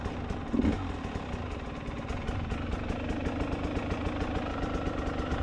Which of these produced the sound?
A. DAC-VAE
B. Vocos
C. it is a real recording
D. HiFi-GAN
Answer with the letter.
C